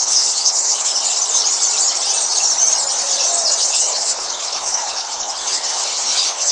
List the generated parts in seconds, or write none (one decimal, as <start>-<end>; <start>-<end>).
0.0-0.9; 3.6-6.5